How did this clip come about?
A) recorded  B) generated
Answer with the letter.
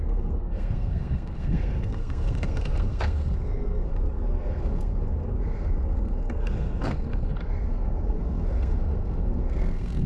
B